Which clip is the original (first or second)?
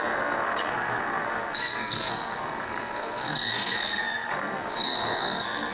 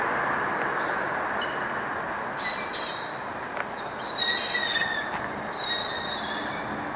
second